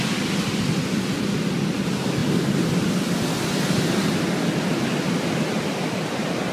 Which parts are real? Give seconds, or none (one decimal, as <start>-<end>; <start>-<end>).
0.0-6.5